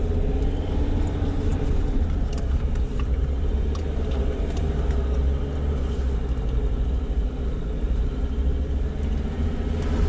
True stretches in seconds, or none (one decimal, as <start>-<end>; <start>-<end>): 0.0-1.5; 4.9-10.1